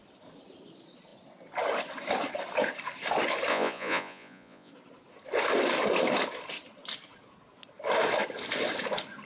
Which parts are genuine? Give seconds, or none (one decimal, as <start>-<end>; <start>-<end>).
0.0-3.5; 4.7-9.3